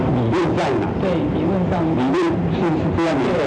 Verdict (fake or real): real